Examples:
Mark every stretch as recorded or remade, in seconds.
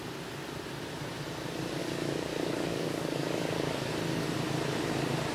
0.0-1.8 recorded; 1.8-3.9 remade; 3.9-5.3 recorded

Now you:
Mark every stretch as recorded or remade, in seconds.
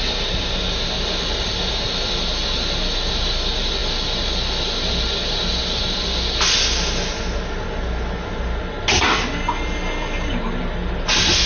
0.0-11.5 recorded